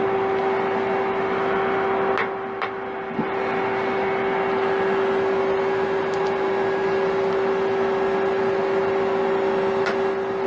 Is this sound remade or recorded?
recorded